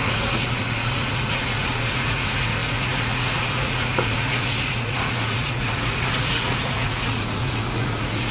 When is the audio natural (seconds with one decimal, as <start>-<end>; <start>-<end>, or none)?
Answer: none